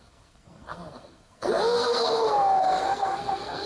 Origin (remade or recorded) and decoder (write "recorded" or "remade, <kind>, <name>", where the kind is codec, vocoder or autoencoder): remade, codec, SNAC